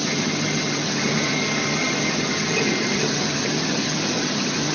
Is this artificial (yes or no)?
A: yes